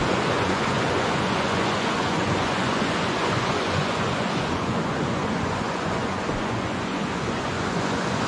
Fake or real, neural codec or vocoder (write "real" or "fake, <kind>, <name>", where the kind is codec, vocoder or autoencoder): fake, vocoder, Vocos